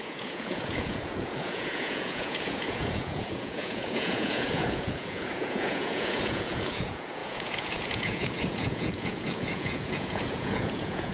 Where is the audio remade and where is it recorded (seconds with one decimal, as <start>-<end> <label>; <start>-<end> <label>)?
0.0-11.1 remade